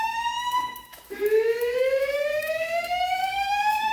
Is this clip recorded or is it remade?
remade